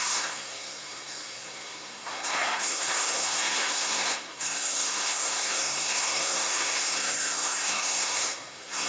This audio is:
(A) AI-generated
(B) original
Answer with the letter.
A